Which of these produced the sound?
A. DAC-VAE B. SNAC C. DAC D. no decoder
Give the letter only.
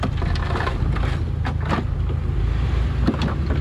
D